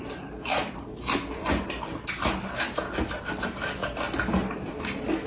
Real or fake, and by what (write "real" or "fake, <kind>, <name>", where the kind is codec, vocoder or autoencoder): real